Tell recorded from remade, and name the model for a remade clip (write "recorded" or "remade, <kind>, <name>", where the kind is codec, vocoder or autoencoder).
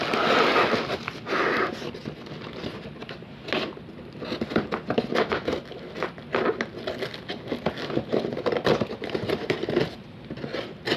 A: recorded